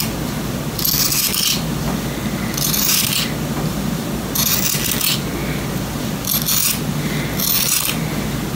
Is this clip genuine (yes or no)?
yes